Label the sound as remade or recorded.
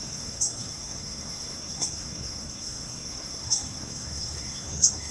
remade